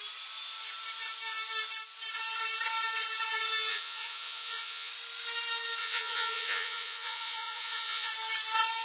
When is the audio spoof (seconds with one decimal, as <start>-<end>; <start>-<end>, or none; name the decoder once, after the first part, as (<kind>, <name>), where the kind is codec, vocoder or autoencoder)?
3.7-4.9 (vocoder, Vocos); 5.8-8.1